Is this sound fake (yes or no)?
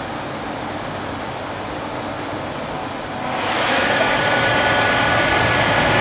no